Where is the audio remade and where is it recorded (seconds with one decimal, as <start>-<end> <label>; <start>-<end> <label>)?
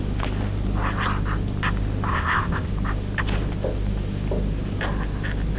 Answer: 0.0-2.1 recorded; 2.1-2.7 remade; 2.7-5.6 recorded